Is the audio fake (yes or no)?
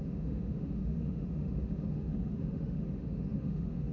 yes